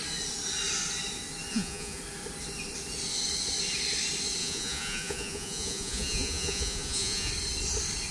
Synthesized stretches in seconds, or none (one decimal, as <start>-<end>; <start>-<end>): 1.5-2.0; 4.4-7.3